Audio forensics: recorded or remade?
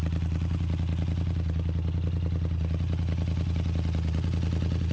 recorded